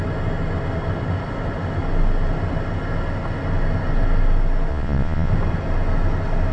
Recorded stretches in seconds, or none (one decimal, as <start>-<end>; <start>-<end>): 0.0-4.7; 5.3-6.5